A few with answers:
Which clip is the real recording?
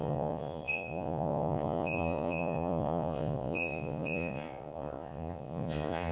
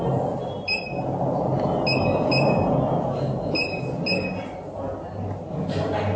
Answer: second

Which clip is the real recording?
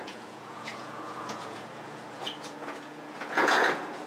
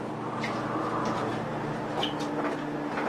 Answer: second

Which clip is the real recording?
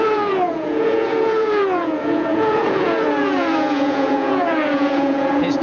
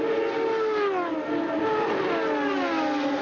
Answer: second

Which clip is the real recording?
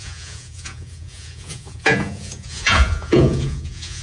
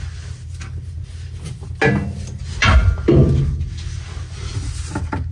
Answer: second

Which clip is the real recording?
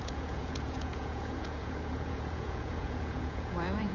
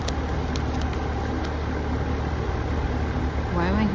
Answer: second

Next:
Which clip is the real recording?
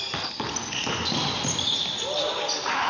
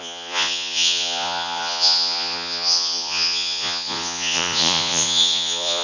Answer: first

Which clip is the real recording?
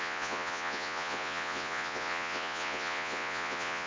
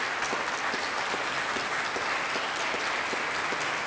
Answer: second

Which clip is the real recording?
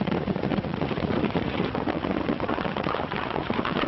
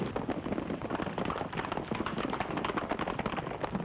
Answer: second